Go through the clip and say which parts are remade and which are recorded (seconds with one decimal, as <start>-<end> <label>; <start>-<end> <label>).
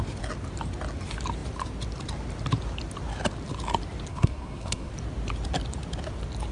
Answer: 0.0-4.1 recorded; 4.1-4.9 remade; 4.9-6.5 recorded